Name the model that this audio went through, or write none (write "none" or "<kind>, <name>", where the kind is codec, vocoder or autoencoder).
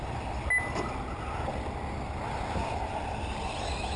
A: none